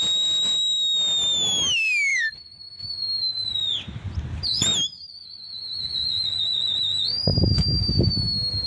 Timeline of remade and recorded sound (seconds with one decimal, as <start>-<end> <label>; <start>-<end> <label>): 0.0-2.1 recorded; 2.1-2.8 remade; 2.8-7.3 recorded; 7.3-8.7 remade